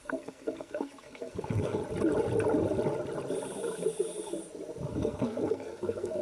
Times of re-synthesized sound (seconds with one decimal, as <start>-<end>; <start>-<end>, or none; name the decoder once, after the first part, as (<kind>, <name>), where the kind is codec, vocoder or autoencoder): 0.0-1.8 (codec, SNAC); 4.9-6.2